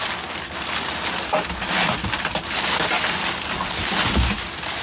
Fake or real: real